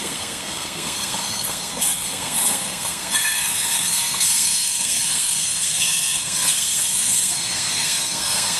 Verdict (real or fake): fake